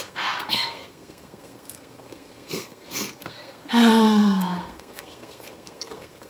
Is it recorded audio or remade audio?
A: remade